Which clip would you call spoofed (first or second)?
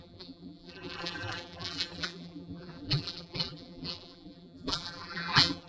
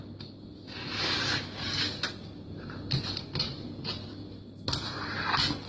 first